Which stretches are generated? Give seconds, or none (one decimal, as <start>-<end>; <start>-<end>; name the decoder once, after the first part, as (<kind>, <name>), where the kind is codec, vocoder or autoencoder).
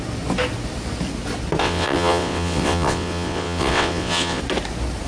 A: 1.6-4.4 (vocoder, WaveNeXt)